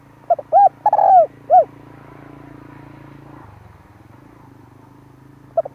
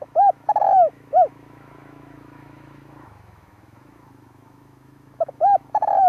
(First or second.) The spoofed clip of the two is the second